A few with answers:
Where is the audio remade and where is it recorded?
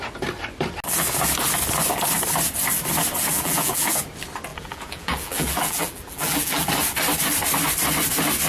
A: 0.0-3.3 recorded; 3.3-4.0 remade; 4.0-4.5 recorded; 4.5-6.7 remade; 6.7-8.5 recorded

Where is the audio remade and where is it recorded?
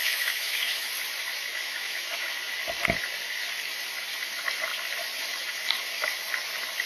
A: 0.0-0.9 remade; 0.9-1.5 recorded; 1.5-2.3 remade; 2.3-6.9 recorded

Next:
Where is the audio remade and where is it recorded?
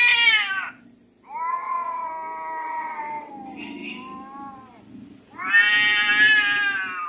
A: 0.0-1.5 recorded; 1.5-2.1 remade; 2.1-2.6 recorded; 2.6-3.3 remade; 3.3-7.1 recorded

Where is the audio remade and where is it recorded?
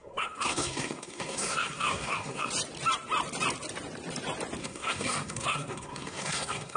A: 0.0-2.5 remade; 2.5-4.6 recorded; 4.6-6.8 remade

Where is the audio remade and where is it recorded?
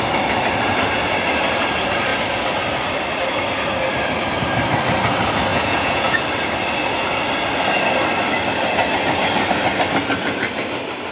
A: 0.0-5.5 recorded; 5.5-6.2 remade; 6.2-11.1 recorded